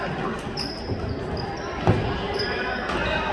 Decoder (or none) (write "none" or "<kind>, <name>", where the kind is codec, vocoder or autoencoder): none